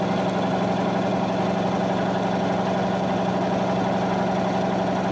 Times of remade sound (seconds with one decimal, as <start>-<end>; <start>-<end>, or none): none